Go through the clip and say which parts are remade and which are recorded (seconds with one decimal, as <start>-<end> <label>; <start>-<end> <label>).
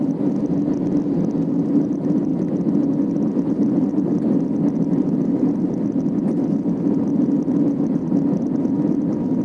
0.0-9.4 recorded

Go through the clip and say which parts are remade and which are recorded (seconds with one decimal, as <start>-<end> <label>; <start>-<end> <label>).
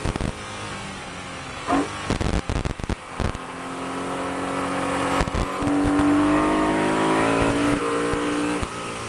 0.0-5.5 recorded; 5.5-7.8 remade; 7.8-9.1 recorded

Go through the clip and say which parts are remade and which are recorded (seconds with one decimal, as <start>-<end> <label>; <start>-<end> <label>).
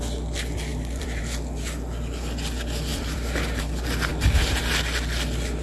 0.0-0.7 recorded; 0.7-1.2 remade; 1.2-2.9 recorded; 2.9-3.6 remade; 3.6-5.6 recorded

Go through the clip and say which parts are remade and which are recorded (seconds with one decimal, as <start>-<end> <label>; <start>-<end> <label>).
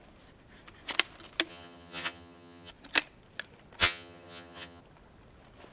0.0-1.5 recorded; 1.5-2.7 remade; 2.7-3.8 recorded; 3.8-4.8 remade; 4.8-5.7 recorded